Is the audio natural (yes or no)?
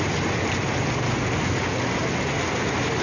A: yes